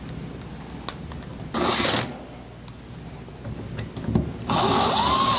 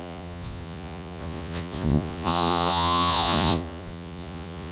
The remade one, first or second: second